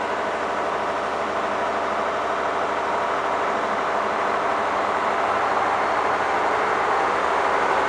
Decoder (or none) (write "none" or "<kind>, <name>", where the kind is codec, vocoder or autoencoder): none